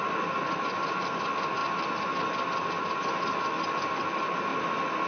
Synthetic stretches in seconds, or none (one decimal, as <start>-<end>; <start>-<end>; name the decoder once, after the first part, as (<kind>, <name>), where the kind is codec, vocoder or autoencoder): 0.0-1.6 (vocoder, BigVGAN v2); 2.7-4.5